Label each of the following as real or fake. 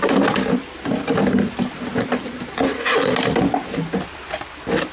real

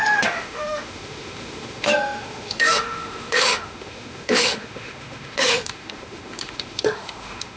fake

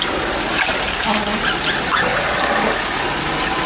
real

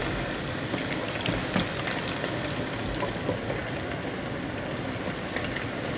real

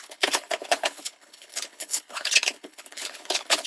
fake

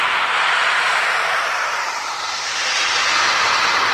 fake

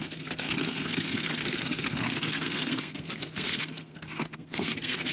fake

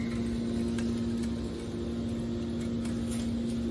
real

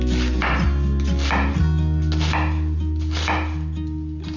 real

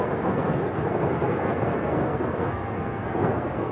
fake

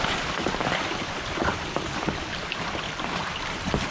fake